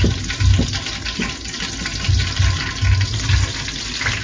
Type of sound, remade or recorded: recorded